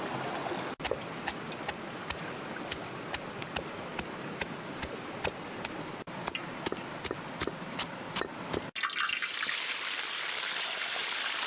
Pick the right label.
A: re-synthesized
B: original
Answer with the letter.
B